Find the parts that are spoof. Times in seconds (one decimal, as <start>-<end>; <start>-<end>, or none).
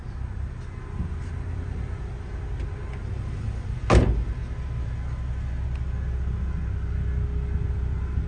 none